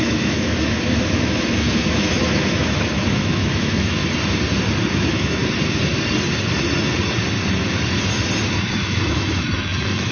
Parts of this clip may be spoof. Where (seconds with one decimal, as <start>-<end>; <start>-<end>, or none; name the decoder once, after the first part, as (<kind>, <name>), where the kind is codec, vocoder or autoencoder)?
0.0-4.0 (autoencoder, DAC-VAE); 4.9-5.4; 8.5-10.1